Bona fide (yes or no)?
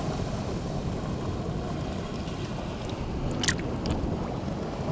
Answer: yes